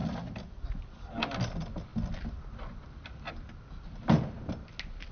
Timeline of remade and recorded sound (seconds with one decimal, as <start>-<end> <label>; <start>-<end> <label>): 0.0-5.1 recorded